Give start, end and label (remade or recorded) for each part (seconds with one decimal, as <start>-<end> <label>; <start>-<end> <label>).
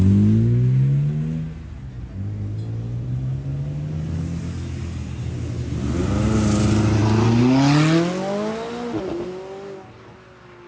0.0-10.7 recorded